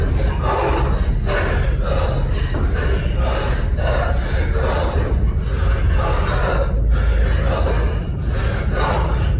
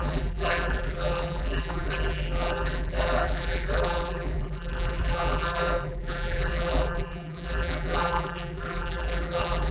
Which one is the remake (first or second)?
second